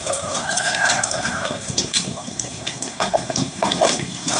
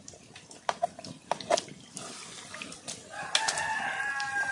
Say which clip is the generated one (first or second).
first